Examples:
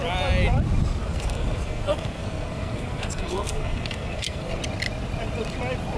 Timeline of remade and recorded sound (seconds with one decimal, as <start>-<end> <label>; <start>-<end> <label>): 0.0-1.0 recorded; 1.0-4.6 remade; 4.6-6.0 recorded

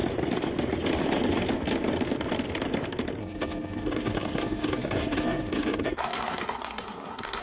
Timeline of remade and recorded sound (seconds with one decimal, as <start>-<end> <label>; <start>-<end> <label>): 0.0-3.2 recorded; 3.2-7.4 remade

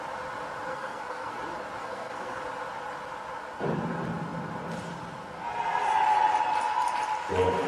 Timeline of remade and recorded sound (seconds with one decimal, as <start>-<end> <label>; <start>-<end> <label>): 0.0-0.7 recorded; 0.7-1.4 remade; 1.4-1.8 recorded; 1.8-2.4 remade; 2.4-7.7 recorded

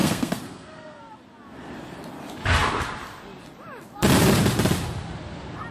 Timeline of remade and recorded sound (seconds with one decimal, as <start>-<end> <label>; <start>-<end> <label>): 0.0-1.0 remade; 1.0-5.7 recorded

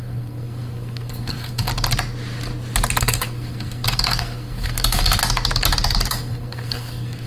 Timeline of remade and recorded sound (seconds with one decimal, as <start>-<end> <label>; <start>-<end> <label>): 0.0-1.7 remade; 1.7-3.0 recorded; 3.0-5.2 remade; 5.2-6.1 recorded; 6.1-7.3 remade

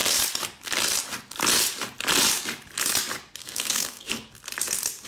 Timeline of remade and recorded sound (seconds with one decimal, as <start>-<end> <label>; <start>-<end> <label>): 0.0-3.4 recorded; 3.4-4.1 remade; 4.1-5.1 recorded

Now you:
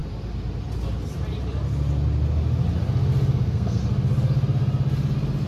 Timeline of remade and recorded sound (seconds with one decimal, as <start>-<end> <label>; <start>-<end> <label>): 0.0-3.3 recorded; 3.3-3.8 remade; 3.8-5.5 recorded